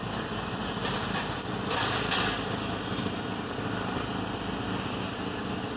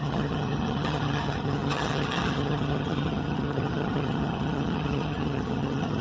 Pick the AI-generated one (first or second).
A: second